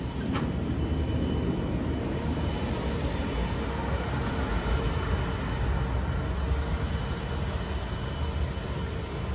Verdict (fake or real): real